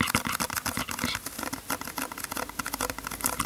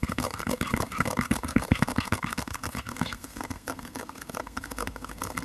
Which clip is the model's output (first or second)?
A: second